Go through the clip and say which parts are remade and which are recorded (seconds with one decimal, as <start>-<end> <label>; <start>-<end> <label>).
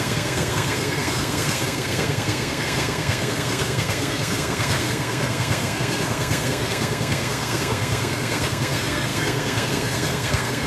0.0-10.7 remade